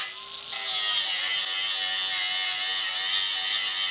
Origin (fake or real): real